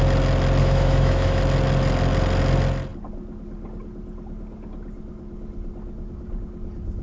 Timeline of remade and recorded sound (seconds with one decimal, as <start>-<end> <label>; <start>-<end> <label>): 0.0-0.6 recorded; 0.6-1.4 remade; 1.4-7.0 recorded